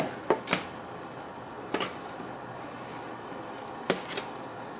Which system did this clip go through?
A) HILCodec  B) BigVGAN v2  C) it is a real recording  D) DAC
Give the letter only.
C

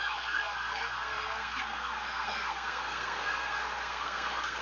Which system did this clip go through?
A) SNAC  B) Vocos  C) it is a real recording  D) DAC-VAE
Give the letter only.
A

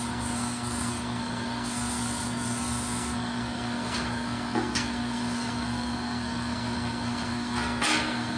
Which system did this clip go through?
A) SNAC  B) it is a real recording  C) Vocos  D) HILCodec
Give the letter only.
A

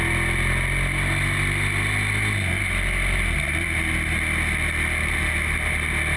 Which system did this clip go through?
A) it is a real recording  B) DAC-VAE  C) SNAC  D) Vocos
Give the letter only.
A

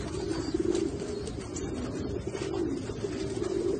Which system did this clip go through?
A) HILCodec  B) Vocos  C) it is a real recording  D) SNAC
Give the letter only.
C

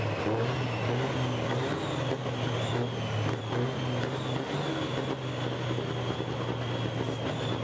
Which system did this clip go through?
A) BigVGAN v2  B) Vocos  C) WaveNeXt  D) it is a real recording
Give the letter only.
D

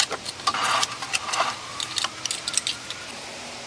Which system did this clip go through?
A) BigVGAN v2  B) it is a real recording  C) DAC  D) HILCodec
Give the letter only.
B